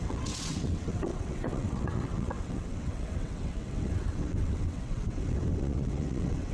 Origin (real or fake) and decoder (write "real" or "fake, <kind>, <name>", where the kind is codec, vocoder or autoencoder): fake, vocoder, WaveNeXt